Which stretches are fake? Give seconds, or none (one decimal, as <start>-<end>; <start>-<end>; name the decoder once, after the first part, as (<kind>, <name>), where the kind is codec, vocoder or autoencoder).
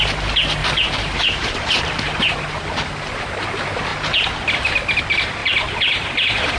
0.6-2.1 (vocoder, BigVGAN v2); 5.4-6.6